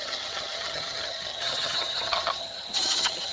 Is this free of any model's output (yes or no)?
no